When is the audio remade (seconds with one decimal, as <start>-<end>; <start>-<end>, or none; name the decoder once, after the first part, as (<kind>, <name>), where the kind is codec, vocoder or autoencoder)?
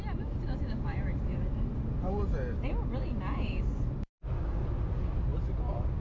none